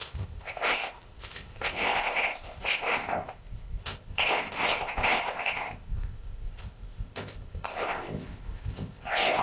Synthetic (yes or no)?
yes